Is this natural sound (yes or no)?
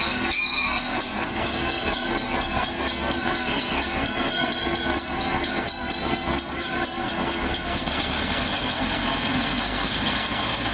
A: no